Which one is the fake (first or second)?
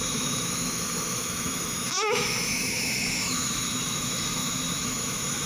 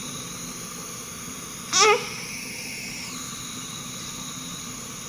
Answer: first